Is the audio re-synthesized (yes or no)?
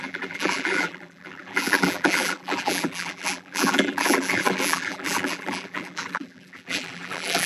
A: yes